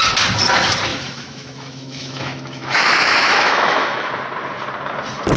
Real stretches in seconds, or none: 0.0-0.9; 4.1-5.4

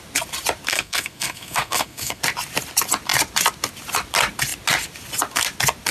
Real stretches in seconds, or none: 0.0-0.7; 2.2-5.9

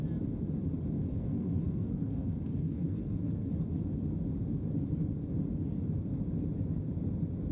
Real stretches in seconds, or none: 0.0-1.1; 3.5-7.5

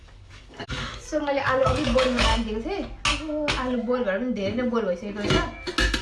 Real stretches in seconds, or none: 2.3-6.0